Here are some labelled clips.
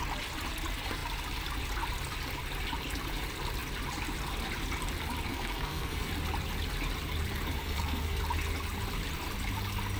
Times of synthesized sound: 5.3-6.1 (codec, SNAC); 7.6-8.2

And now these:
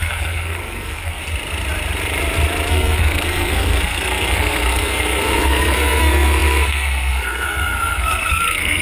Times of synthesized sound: 0.0-1.2 (codec, SNAC); 2.7-8.8